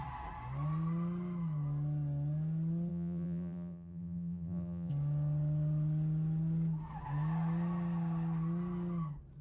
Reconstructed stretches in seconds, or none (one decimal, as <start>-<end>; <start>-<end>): 2.9-4.9